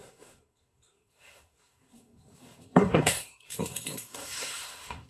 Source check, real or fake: fake